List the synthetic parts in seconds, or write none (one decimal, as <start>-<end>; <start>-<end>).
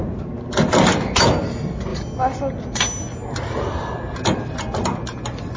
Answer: none